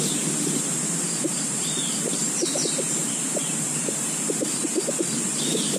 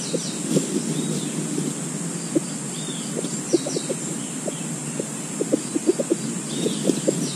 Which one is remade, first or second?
first